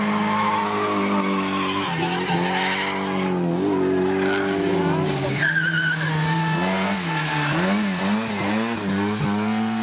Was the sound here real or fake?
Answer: real